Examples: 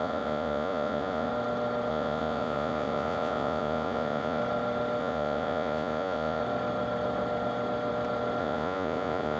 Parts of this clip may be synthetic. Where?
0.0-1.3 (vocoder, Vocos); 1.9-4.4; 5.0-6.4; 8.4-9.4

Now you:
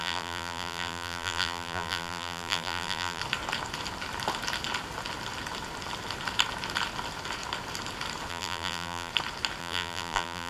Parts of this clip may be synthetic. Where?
0.0-3.2 (vocoder, BigVGAN v2); 8.3-9.1; 9.6-10.5

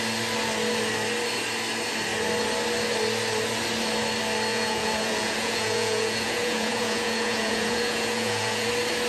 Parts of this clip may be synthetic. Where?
4.5-8.7 (vocoder, Vocos)

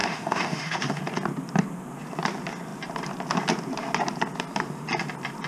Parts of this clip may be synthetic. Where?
0.0-1.0 (autoencoder, DAC-VAE)

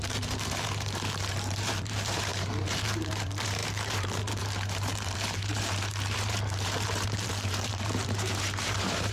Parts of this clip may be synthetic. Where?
0.0-9.1 (vocoder, BigVGAN v2)